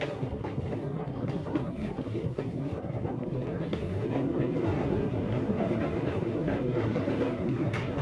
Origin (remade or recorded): remade